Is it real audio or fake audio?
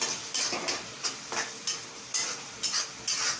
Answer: real